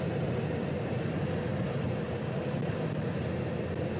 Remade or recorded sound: recorded